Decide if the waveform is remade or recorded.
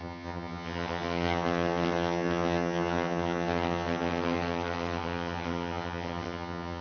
remade